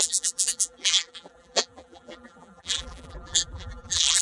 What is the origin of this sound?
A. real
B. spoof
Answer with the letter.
B